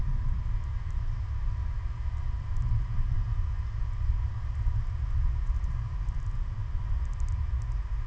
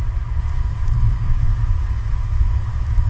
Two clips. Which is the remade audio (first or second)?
second